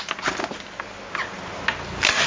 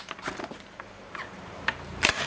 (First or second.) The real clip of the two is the first